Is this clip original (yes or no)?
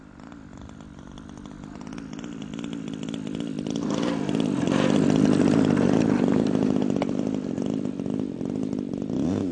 yes